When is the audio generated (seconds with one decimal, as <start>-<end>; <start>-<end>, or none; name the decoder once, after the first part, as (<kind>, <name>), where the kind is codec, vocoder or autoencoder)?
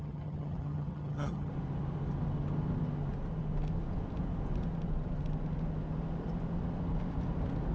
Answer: 0.0-1.5 (vocoder, HiFi-GAN)